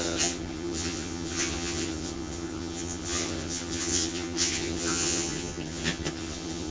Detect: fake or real fake